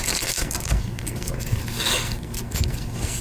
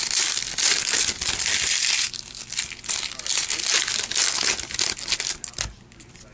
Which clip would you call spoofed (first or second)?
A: first